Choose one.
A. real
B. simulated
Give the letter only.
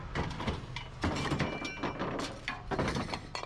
A